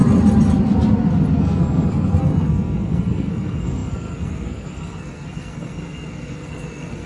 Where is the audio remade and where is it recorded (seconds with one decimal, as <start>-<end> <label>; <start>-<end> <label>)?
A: 0.0-1.4 recorded; 1.4-7.1 remade